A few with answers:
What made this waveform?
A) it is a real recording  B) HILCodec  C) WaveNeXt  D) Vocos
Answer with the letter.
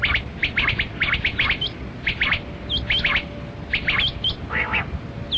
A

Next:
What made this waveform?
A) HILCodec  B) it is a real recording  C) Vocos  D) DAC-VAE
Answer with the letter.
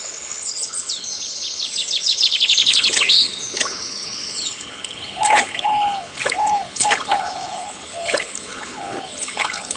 A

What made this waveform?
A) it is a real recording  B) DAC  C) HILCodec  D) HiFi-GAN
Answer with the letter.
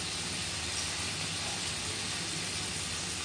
A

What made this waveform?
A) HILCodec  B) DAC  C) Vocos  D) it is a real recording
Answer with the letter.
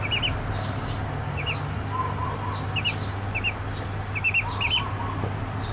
D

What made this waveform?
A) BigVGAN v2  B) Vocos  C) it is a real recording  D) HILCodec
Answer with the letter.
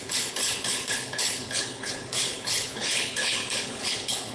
D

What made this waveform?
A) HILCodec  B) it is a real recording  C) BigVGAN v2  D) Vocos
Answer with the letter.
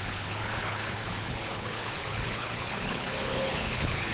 A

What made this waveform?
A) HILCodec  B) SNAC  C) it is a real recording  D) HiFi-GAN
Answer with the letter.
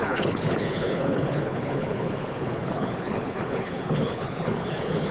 A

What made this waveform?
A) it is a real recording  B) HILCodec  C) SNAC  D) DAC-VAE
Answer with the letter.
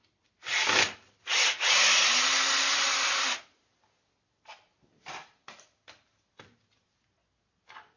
A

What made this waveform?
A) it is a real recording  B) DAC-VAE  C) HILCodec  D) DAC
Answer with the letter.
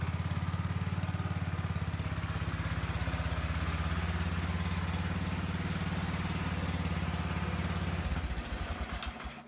A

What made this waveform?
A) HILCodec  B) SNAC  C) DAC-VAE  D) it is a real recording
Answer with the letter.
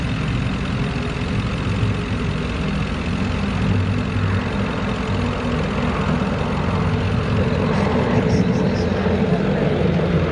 D